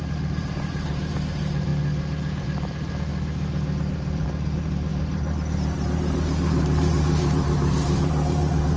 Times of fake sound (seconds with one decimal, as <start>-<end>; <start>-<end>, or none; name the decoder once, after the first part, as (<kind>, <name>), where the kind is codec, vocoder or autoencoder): 0.0-1.7 (vocoder, BigVGAN v2); 2.4-3.1; 3.8-8.8